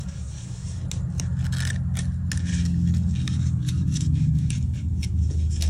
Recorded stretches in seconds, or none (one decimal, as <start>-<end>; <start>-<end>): 0.8-2.5